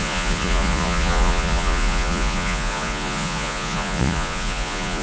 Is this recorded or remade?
remade